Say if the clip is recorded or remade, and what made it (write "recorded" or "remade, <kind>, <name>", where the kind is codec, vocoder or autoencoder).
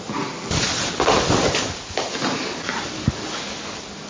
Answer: recorded